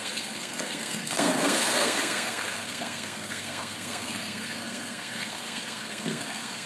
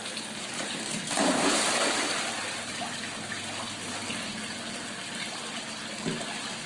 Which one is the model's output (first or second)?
first